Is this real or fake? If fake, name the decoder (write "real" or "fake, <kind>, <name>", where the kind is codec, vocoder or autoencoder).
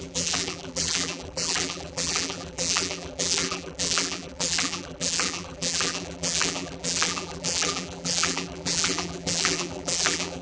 fake, vocoder, BigVGAN v2